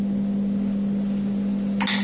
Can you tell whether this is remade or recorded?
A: recorded